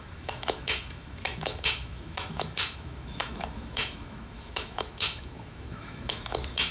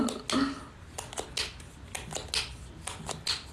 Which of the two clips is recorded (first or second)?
second